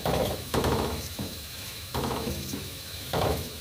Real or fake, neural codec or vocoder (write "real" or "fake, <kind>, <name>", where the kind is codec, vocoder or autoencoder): fake, autoencoder, DAC-VAE